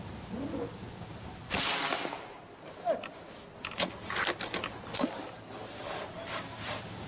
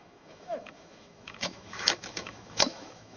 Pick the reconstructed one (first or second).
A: second